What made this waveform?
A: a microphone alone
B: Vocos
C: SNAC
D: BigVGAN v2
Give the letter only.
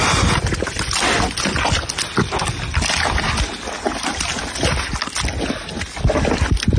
A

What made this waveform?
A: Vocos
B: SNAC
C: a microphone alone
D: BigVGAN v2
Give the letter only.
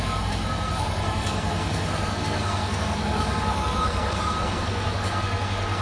B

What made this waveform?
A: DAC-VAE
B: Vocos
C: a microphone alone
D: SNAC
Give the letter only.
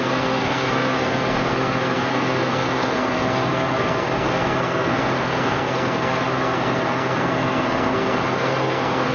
D